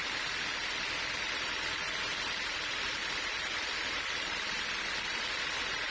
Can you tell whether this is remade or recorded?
remade